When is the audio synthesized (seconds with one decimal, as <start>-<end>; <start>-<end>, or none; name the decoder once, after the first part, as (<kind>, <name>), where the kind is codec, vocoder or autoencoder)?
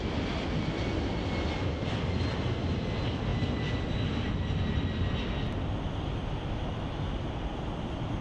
none